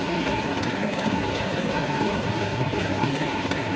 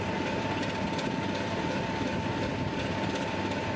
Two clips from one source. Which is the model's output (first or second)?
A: first